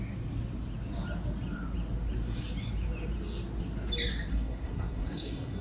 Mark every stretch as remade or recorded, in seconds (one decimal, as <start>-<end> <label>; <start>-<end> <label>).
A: 0.0-4.3 recorded; 4.3-5.6 remade